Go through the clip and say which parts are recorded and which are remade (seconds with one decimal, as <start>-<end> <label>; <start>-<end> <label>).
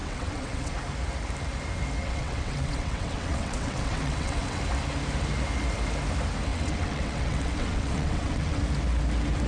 0.0-0.7 remade; 0.7-2.0 recorded; 2.0-4.6 remade; 4.6-6.5 recorded; 6.5-8.6 remade; 8.6-9.5 recorded